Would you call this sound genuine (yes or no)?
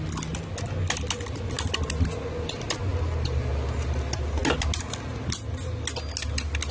yes